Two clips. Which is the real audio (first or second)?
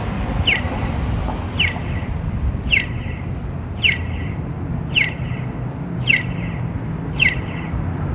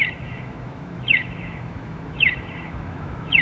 first